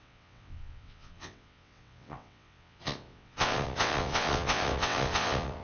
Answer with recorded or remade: remade